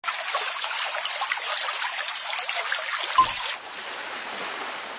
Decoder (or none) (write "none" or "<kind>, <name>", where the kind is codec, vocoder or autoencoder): none